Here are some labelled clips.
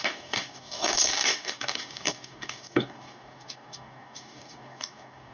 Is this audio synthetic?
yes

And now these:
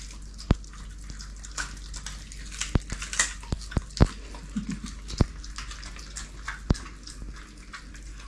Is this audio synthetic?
no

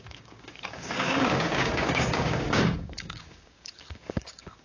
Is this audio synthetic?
yes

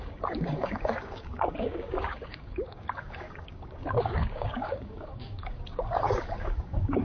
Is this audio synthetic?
yes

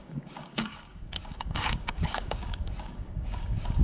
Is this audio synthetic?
yes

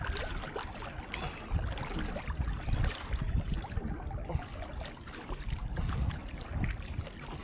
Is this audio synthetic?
no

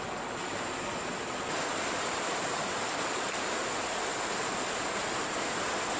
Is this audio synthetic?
no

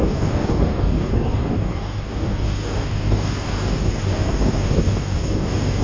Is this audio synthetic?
yes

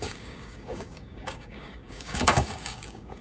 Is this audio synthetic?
yes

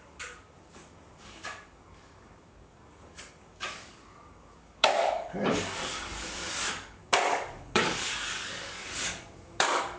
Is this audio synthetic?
yes